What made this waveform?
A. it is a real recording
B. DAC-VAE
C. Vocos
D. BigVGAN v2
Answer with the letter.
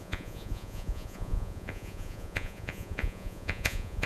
C